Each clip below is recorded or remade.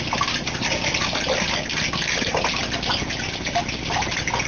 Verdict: recorded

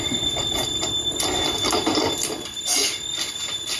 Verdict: recorded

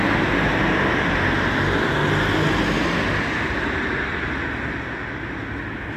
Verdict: recorded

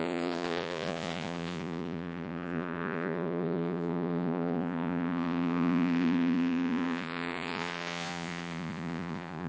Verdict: remade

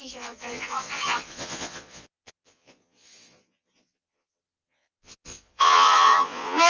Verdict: remade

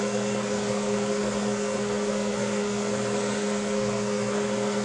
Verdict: remade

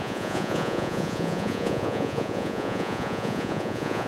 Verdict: remade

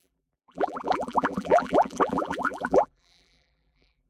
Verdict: remade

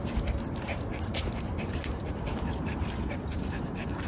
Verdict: remade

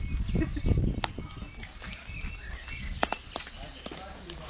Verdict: recorded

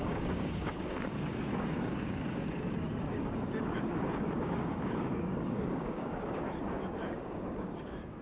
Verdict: remade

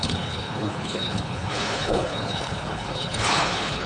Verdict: remade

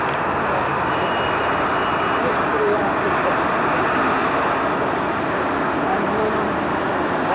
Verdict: recorded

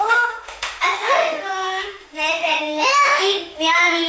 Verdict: remade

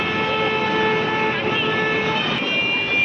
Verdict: recorded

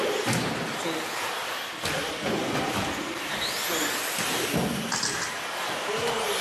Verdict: recorded